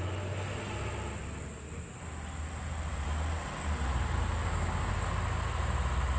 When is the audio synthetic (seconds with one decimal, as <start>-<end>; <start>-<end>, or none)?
4.4-4.9